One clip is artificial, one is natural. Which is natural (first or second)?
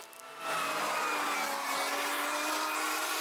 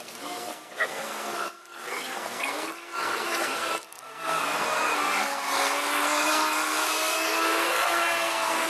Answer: first